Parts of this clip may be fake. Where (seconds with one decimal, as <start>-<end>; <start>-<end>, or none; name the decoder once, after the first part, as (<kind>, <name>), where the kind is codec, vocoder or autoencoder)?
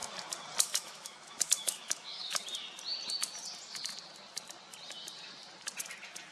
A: 0.6-2.4 (autoencoder, DAC-VAE)